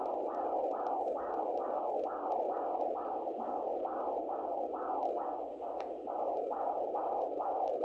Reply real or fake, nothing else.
real